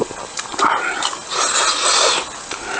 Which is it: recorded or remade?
recorded